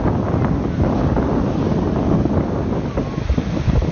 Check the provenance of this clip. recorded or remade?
recorded